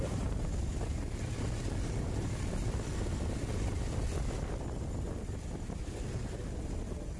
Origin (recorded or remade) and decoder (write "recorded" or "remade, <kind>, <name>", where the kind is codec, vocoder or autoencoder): recorded